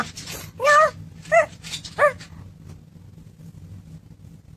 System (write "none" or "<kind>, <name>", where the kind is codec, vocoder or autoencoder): none